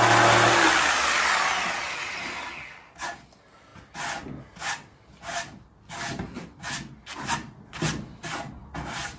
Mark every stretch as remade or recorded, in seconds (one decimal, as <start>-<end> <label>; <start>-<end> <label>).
0.0-9.2 recorded